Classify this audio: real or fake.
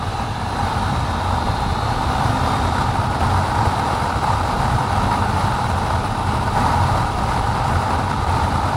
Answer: fake